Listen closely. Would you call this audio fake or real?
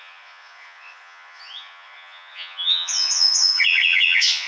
fake